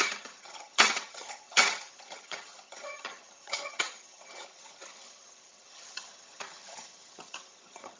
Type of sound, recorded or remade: remade